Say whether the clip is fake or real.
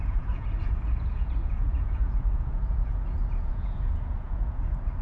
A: fake